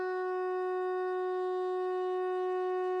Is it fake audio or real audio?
real